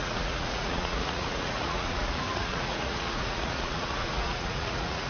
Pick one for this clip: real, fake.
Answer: fake